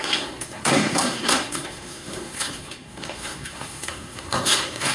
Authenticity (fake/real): fake